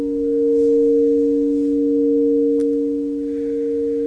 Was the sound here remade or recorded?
recorded